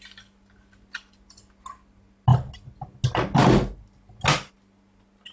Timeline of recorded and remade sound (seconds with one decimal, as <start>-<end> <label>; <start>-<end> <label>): 0.0-5.3 recorded